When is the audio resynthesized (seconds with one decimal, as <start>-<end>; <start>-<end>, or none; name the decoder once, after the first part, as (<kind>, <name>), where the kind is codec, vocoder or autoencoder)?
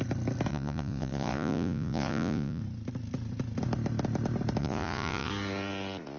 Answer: 0.5-2.6 (vocoder, Vocos); 4.6-5.3